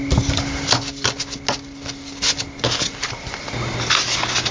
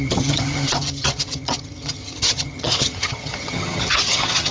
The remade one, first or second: second